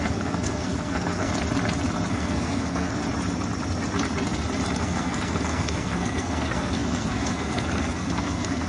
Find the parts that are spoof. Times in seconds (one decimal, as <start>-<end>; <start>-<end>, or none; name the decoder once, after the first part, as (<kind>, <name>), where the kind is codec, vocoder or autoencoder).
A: 0.0-1.3 (codec, SNAC); 2.1-3.0; 4.8-8.7